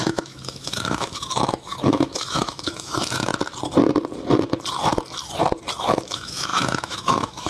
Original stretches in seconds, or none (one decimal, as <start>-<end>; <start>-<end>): 3.3-5.8